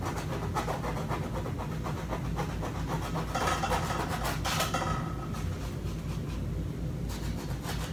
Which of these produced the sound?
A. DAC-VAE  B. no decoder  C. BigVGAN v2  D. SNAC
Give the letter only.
B